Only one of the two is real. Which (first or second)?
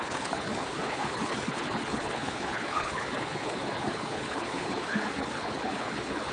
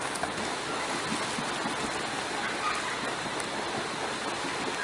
second